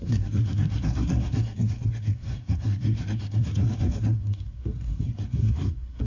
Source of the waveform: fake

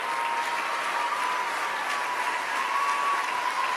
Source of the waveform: real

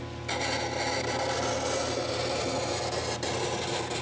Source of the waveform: real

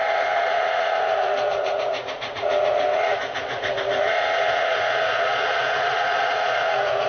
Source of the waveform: fake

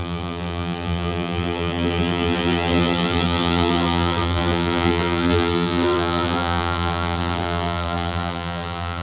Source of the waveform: fake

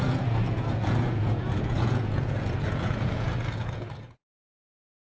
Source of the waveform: fake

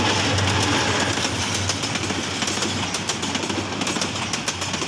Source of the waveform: real